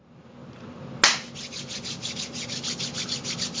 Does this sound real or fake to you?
real